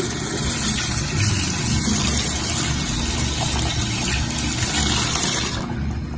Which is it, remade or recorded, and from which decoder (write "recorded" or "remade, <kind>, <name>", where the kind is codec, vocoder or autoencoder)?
recorded